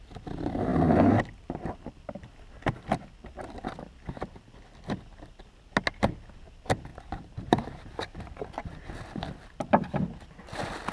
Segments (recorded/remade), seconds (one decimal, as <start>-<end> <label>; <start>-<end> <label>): 0.0-6.9 recorded; 6.9-7.9 remade; 7.9-10.9 recorded